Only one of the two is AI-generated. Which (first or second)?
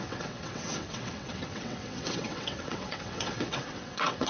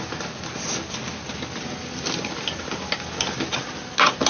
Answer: first